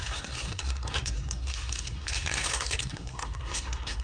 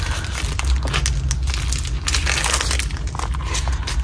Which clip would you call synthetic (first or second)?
first